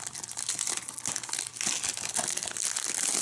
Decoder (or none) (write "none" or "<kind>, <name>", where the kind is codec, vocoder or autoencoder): none